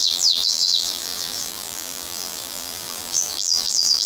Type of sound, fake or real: fake